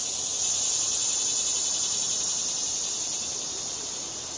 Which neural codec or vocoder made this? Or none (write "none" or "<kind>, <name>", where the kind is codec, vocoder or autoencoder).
none